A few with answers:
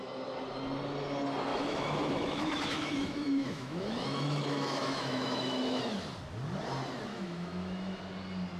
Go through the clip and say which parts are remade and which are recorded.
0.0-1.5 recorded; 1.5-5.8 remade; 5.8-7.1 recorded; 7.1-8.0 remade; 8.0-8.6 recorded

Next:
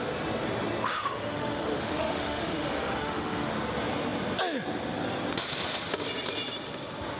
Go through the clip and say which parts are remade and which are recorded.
0.0-0.9 recorded; 0.9-3.5 remade; 3.5-7.2 recorded

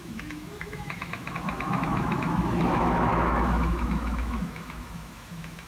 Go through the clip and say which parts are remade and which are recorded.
0.0-5.7 remade

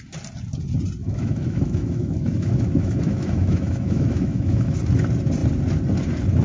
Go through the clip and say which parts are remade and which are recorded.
0.0-1.0 recorded; 1.0-4.8 remade; 4.8-6.4 recorded

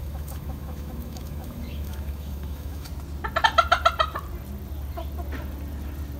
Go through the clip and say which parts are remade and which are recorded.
0.0-2.9 remade; 2.9-6.2 recorded

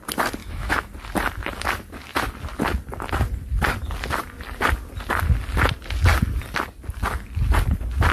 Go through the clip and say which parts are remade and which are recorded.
0.0-0.4 recorded; 0.4-0.9 remade; 0.9-8.1 recorded